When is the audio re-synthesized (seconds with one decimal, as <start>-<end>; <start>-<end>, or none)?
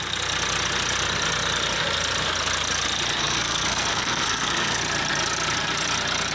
3.2-4.8